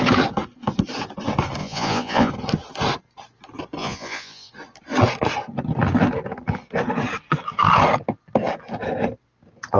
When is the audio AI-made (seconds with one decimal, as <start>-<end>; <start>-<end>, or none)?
1.6-2.3; 3.8-4.5